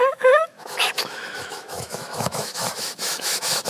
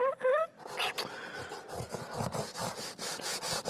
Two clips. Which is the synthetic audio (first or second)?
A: first